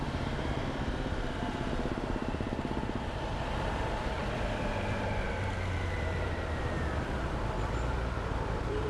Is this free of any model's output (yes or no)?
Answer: no